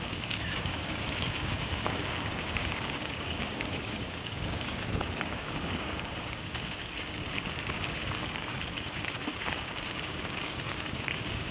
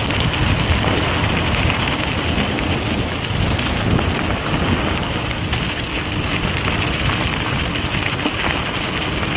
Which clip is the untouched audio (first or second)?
second